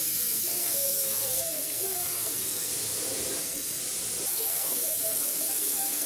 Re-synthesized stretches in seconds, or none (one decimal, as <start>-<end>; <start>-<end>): 0.0-2.7; 3.4-3.8; 4.3-6.1